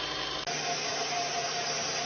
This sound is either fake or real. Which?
real